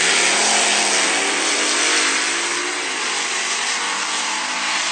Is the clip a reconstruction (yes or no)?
no